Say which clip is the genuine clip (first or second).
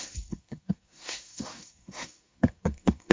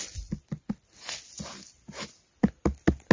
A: second